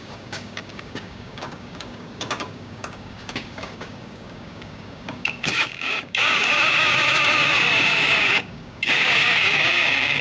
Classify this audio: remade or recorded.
remade